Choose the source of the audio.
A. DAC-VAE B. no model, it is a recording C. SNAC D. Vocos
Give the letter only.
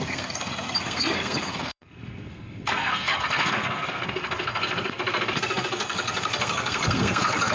C